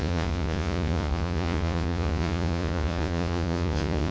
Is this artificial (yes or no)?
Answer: yes